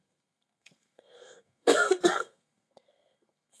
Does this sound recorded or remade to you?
remade